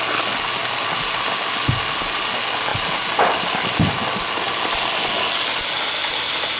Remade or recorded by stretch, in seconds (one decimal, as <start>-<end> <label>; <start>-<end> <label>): 0.0-6.6 recorded